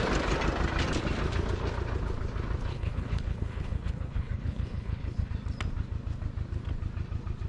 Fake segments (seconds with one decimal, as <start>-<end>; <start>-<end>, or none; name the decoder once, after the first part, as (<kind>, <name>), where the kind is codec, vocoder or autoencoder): 2.7-5.3 (codec, HILCodec)